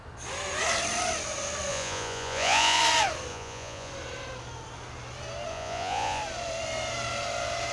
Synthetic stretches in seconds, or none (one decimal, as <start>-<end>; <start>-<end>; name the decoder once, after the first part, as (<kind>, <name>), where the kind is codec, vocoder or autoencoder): 1.7-2.8 (vocoder, Vocos); 3.3-3.9; 5.5-6.2